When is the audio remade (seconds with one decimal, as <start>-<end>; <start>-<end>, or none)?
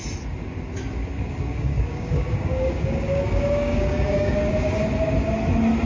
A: 1.0-4.5